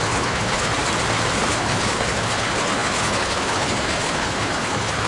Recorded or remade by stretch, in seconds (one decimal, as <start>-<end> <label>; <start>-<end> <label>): 0.0-0.7 remade; 0.7-1.5 recorded; 1.5-5.1 remade